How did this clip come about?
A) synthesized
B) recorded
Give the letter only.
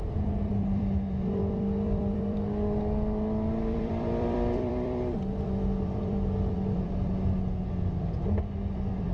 A